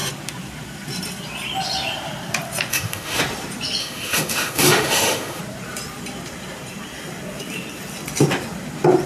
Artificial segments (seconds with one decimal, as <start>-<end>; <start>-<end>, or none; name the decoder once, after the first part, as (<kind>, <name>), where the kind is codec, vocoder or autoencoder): 2.7-3.2 (autoencoder, DAC-VAE); 3.8-5.4

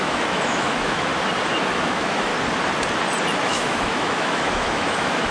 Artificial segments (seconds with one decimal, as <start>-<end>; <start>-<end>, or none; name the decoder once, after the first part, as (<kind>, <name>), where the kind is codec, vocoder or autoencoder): 0.0-1.1 (autoencoder, DAC-VAE); 1.7-2.3; 3.4-5.3

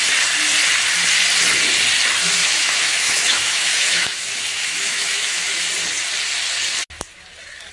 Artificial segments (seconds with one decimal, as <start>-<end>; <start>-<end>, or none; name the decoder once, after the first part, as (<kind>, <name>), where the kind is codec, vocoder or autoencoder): 2.4-5.5 (autoencoder, DAC-VAE)

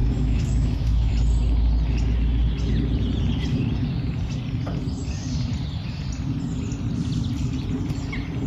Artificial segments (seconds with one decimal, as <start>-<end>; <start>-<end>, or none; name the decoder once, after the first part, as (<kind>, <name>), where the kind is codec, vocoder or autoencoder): 0.0-1.1 (autoencoder, DAC-VAE)

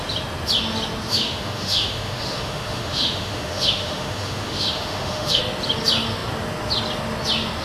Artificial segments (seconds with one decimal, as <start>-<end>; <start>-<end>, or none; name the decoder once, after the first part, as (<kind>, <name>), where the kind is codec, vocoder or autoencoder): 1.1-5.4 (autoencoder, DAC-VAE)

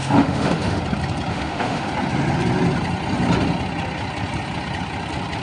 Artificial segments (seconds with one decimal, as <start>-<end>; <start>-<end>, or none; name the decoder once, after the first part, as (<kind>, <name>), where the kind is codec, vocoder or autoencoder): 0.0-0.8 (autoencoder, DAC-VAE); 1.3-1.9